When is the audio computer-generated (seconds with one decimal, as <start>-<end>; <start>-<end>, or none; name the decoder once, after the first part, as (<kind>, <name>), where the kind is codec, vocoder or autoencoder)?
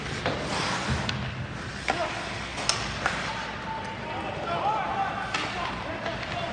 none